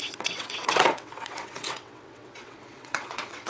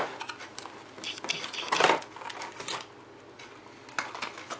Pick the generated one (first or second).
first